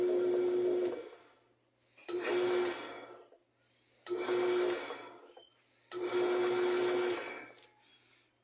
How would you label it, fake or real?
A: real